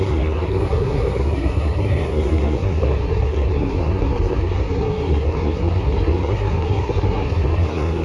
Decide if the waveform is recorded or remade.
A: remade